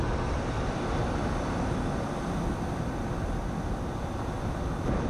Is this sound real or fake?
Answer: real